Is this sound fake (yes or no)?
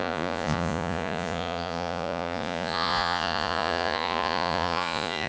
yes